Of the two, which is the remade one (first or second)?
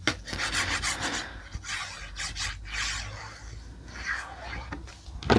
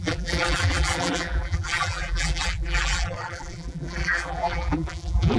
second